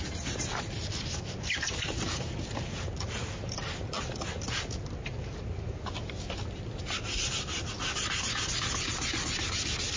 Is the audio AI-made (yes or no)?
no